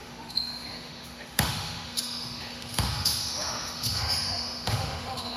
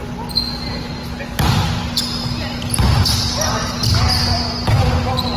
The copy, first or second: first